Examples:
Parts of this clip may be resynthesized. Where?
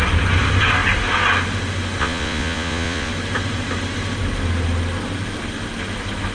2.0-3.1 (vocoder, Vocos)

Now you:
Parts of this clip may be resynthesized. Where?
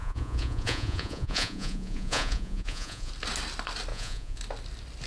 0.0-3.1 (vocoder, Vocos); 3.9-4.4